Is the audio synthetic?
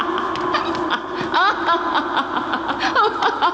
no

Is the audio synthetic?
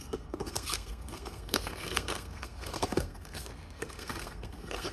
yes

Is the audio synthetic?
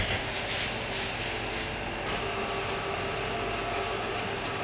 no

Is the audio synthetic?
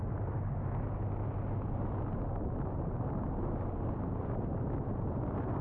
no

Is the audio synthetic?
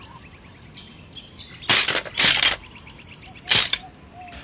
no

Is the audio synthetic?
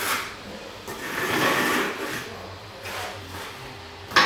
no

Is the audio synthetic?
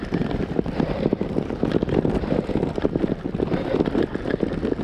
no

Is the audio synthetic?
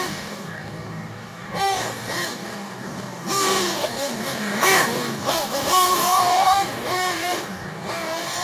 yes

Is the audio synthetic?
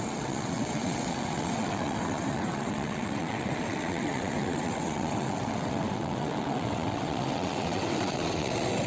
yes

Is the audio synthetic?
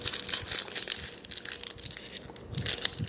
no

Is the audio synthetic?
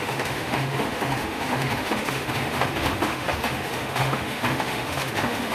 yes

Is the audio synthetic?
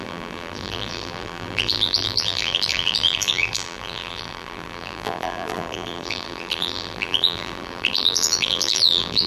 yes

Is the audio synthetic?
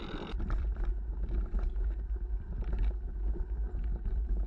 no